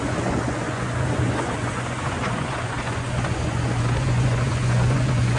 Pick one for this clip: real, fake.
fake